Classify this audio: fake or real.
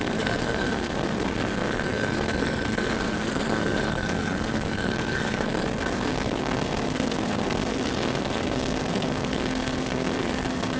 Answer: fake